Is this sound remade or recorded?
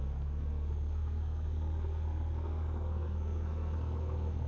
remade